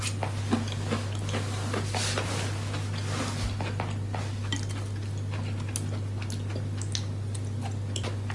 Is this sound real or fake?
real